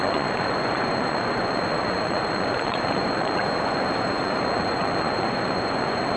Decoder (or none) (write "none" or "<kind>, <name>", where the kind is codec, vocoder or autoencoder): vocoder, Vocos